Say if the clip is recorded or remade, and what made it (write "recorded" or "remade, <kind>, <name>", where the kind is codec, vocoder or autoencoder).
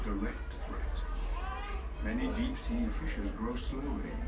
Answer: recorded